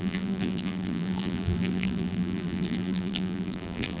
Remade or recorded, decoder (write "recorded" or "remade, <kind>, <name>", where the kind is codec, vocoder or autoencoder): remade, vocoder, BigVGAN v2